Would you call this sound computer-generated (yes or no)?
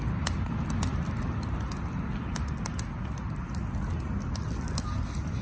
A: no